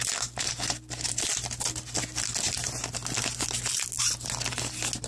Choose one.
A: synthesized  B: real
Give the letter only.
B